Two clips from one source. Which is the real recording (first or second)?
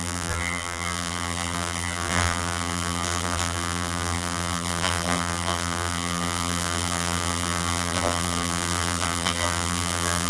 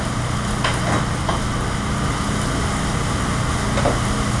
second